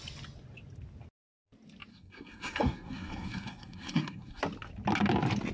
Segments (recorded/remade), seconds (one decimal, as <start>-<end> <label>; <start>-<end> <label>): 0.0-1.9 recorded; 1.9-4.4 remade; 4.4-5.5 recorded